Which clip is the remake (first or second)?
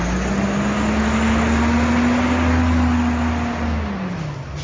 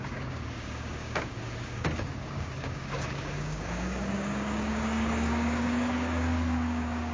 second